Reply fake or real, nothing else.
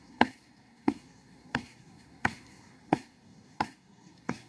fake